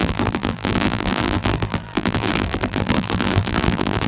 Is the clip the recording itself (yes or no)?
no